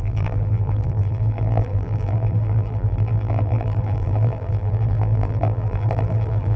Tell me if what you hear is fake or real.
fake